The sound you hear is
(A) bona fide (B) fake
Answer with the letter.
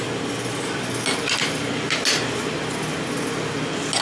A